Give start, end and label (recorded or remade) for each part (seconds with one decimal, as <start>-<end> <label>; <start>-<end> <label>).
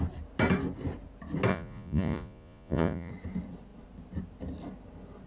0.0-1.5 recorded; 1.5-3.1 remade; 3.1-5.3 recorded